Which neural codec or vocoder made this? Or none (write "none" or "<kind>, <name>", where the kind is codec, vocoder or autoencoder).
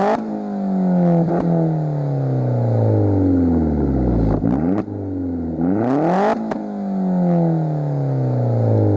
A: none